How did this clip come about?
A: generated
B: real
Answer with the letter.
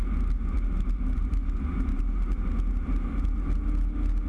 B